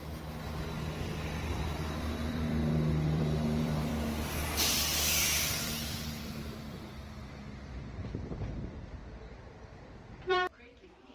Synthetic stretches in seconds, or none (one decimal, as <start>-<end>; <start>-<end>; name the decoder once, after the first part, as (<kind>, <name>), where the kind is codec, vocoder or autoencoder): 1.0-3.9 (vocoder, BigVGAN v2); 5.2-7.2; 8.1-11.1